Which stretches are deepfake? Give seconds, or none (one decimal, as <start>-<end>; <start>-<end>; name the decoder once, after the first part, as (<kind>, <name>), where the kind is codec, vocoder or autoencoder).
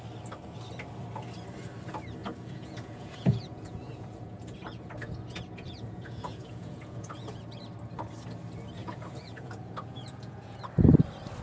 2.2-7.4 (vocoder, Vocos); 8.8-10.6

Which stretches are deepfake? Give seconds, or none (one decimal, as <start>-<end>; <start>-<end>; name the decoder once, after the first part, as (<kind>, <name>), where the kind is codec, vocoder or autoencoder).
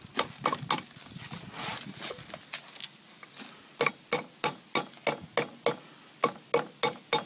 none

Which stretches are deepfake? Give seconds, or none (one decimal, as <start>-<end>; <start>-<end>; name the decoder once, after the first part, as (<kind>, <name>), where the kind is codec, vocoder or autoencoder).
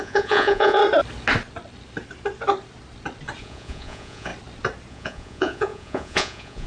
0.0-0.8 (vocoder, Vocos); 3.4-4.3; 4.9-6.7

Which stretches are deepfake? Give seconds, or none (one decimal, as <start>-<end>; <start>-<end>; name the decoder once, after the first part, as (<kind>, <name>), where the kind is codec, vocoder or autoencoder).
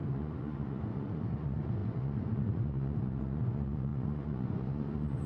0.0-5.3 (vocoder, Vocos)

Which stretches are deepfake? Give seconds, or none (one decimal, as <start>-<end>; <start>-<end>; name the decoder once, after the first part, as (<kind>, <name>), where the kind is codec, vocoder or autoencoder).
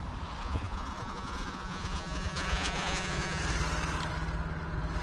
0.4-3.4 (vocoder, Vocos)